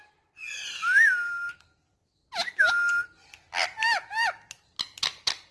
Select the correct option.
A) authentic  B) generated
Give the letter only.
A